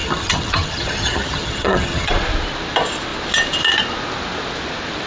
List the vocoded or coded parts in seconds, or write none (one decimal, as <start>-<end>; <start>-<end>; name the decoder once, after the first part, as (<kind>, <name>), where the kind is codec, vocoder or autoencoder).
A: 0.0-2.1 (vocoder, HiFi-GAN)